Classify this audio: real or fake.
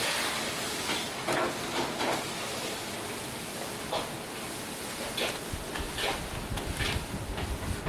real